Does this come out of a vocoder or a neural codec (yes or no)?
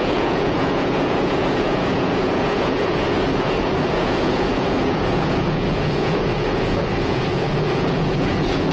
yes